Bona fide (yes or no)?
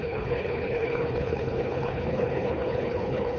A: no